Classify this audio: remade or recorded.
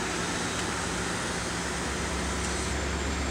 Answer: recorded